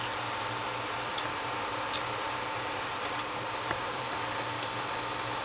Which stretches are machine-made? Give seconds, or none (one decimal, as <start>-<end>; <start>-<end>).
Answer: 1.1-4.3